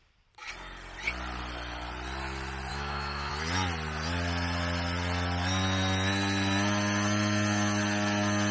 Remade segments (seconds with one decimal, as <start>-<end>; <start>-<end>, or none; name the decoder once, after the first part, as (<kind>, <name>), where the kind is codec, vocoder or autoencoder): 2.7-3.3 (autoencoder, DAC-VAE)